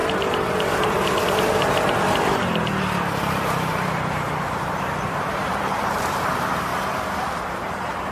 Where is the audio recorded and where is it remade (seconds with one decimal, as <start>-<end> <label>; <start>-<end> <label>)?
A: 0.0-3.2 recorded; 3.2-6.7 remade; 6.7-7.5 recorded; 7.5-8.1 remade